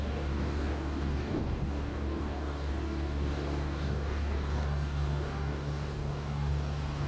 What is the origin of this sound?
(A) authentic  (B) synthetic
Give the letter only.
B